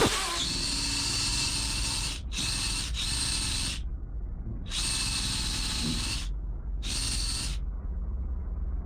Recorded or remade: recorded